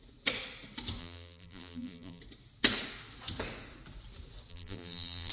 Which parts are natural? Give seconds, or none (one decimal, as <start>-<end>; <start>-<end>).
0.0-1.0; 2.2-4.5